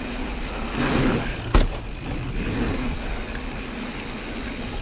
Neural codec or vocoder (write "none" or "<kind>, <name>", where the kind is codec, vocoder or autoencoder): none